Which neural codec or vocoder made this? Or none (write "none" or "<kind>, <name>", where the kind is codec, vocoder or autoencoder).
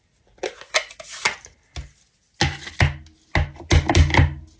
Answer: none